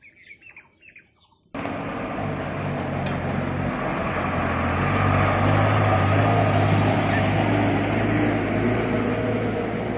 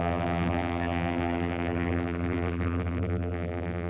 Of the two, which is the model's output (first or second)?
second